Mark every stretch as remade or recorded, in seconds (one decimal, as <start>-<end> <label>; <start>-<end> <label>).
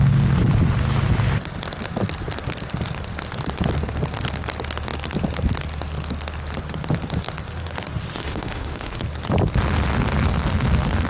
0.0-8.2 recorded; 8.2-9.0 remade; 9.0-11.1 recorded